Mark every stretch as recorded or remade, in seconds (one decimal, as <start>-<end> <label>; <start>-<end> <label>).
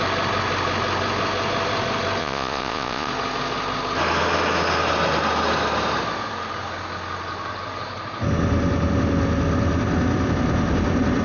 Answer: 0.0-2.2 recorded; 2.2-3.1 remade; 3.1-11.2 recorded